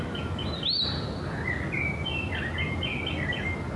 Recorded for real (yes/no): yes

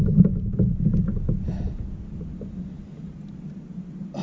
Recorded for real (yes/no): yes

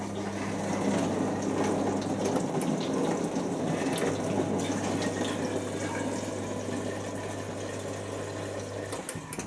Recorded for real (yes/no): yes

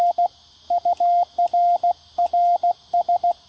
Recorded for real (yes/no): yes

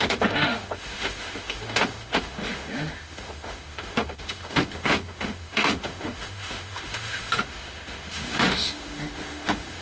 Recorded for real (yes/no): no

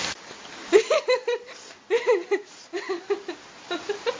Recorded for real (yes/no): no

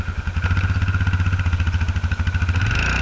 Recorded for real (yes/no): yes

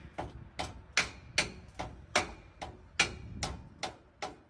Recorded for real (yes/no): yes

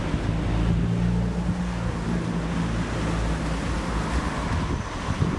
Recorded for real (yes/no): yes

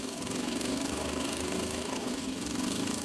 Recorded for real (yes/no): no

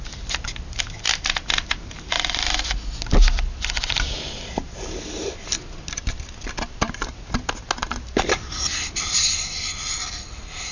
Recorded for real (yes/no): yes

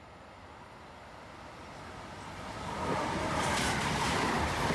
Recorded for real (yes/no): yes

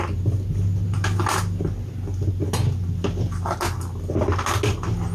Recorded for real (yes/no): yes